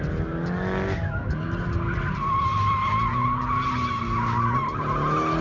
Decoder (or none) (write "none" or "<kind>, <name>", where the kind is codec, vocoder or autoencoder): none